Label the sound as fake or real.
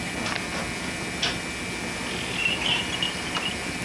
real